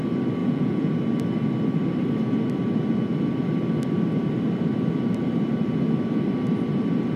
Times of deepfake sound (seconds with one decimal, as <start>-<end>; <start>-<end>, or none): 0.4-0.9